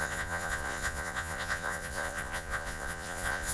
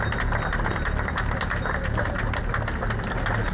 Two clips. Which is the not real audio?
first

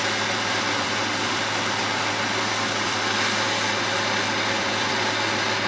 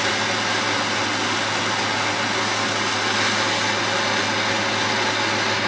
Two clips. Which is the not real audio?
first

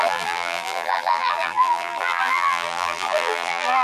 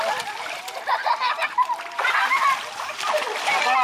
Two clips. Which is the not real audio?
first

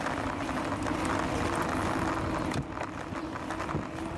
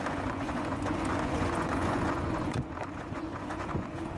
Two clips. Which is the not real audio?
second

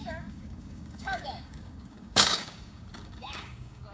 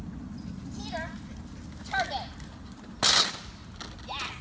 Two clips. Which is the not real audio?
first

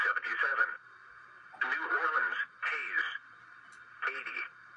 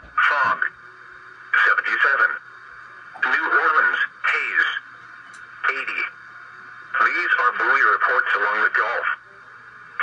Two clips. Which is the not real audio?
first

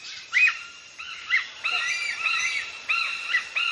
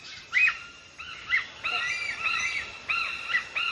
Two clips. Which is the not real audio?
first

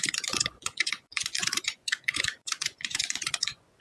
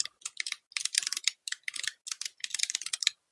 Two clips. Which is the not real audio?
first